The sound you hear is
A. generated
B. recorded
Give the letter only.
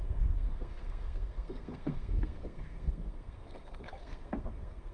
A